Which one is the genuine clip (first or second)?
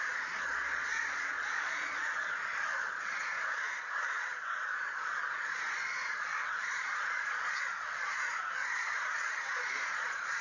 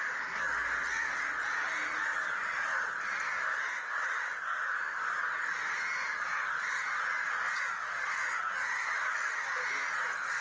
second